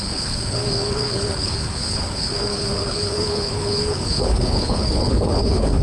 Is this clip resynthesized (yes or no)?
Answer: yes